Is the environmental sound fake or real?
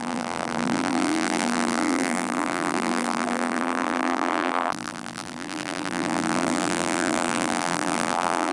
fake